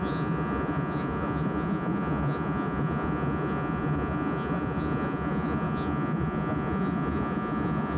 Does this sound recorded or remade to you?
remade